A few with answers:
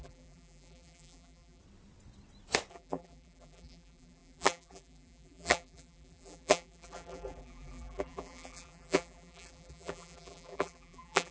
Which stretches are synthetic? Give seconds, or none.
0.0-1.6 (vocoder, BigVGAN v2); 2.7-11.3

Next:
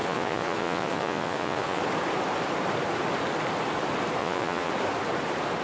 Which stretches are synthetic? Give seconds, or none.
0.0-1.8 (vocoder, Vocos); 4.2-4.7

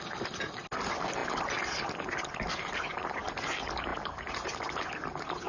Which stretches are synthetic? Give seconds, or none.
none

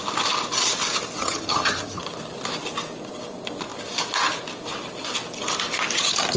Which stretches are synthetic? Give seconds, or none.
1.2-2.0 (vocoder, HiFi-GAN)